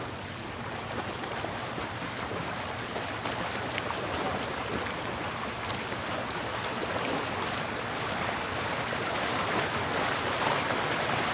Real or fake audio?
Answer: real